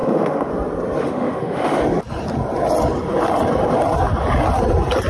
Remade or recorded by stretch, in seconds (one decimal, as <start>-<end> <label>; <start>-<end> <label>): 0.0-0.5 remade; 0.5-1.0 recorded; 1.0-1.8 remade; 1.8-5.1 recorded

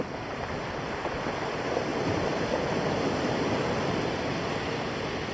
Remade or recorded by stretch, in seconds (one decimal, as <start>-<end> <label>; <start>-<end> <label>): 0.0-5.3 recorded

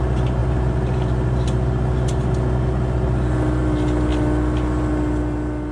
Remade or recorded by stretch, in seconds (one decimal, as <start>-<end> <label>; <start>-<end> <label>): 0.0-5.7 recorded

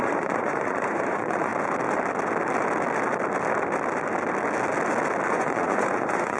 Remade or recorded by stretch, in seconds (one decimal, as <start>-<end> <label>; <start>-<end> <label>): 0.0-1.5 remade; 1.5-5.3 recorded; 5.3-6.4 remade

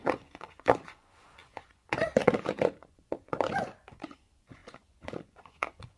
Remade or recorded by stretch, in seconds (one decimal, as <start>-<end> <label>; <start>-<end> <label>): 0.0-6.0 remade

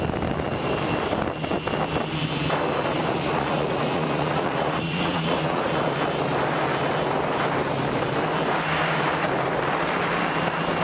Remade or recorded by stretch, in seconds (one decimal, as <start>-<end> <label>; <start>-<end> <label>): 0.0-2.9 recorded; 2.9-5.9 remade; 5.9-10.8 recorded